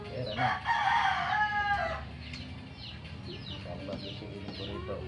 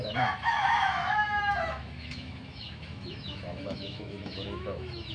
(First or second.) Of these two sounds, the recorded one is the first